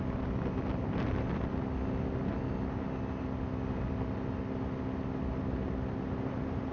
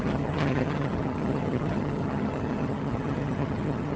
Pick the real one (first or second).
first